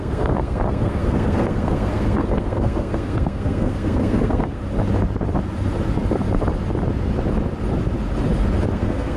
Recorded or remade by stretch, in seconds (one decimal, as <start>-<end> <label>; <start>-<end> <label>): 0.0-4.6 remade; 4.6-8.7 recorded; 8.7-9.2 remade